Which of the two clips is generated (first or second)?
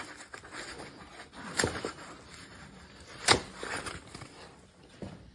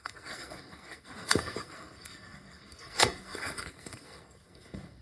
second